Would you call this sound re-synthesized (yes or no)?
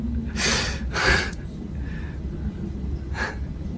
no